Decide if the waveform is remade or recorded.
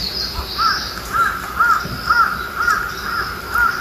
recorded